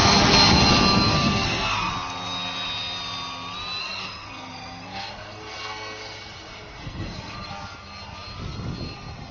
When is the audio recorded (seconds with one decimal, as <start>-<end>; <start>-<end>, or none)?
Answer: 0.0-1.1; 1.9-3.8; 7.5-9.3